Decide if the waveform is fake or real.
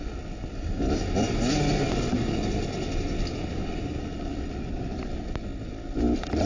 real